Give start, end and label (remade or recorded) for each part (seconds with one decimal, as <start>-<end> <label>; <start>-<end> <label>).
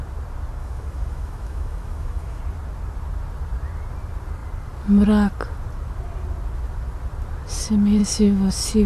0.0-0.6 recorded; 0.6-2.4 remade; 2.4-8.0 recorded; 8.0-8.5 remade; 8.5-8.9 recorded